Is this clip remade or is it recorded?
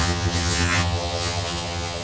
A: remade